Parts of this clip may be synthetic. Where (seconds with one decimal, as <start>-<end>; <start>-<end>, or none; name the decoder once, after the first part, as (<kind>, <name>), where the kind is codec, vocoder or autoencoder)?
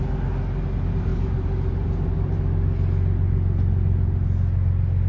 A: 1.1-2.4 (vocoder, BigVGAN v2)